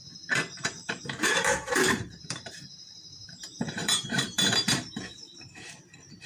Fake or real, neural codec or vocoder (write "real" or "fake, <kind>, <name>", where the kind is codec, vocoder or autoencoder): fake, vocoder, BigVGAN v2